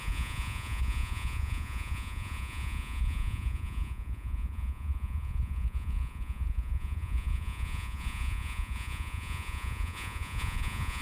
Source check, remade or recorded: remade